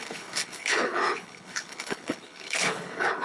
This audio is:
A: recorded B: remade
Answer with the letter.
B